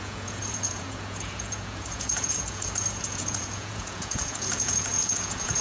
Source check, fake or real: fake